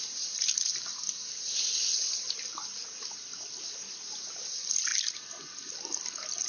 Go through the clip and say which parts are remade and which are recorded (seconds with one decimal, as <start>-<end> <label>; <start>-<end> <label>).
0.0-6.5 recorded